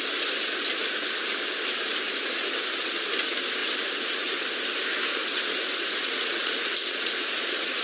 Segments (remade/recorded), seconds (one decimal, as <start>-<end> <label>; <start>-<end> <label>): 0.0-6.0 recorded; 6.0-7.8 remade